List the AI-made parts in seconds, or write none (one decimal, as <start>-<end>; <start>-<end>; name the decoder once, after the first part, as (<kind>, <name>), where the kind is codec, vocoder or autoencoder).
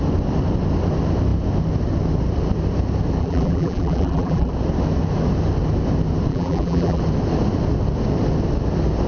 3.2-4.5 (vocoder, BigVGAN v2); 6.3-7.0